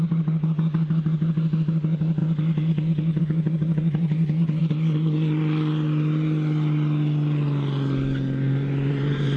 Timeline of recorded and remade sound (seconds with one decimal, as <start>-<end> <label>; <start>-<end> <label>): 0.0-2.2 remade; 2.2-3.2 recorded; 3.2-4.6 remade; 4.6-8.9 recorded; 8.9-9.4 remade